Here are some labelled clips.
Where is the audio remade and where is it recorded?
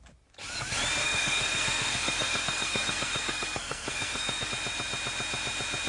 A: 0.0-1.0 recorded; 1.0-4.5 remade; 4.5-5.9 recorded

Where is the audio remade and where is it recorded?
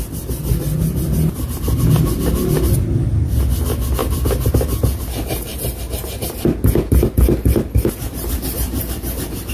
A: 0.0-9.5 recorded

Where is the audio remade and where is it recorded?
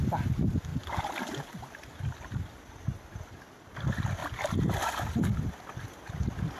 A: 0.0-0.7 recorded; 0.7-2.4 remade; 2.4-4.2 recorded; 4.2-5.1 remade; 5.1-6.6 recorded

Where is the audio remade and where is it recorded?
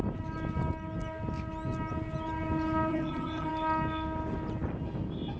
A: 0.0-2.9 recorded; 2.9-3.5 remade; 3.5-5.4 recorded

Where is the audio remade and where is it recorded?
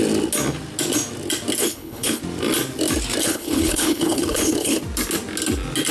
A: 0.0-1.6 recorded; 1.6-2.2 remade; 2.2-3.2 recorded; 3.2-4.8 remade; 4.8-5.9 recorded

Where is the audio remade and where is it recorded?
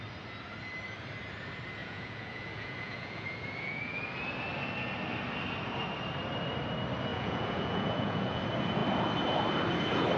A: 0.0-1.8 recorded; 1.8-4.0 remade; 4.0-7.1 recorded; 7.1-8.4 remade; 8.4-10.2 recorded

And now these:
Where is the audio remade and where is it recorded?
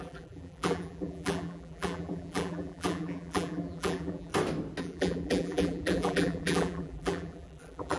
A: 0.0-4.3 remade; 4.3-4.8 recorded; 4.8-8.0 remade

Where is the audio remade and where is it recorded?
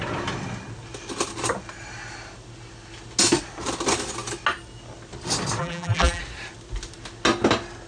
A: 0.0-5.6 recorded; 5.6-6.2 remade; 6.2-7.9 recorded